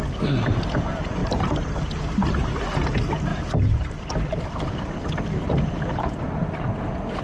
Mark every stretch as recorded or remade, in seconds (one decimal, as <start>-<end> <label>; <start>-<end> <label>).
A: 0.0-1.2 recorded; 1.2-2.0 remade; 2.0-7.2 recorded